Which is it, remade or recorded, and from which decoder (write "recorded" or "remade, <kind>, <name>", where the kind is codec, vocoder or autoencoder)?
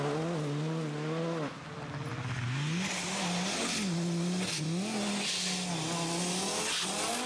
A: recorded